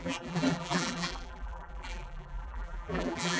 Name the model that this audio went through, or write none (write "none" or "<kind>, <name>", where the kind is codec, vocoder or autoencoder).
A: vocoder, BigVGAN v2